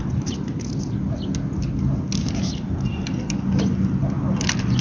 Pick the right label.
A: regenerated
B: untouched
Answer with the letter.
B